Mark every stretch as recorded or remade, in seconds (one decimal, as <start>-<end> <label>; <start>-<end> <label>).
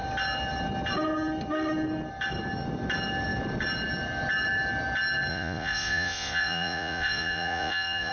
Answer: 0.0-5.3 recorded; 5.3-8.1 remade